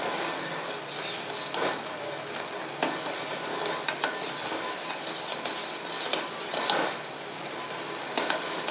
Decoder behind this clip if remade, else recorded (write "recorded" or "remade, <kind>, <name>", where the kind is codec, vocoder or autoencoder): recorded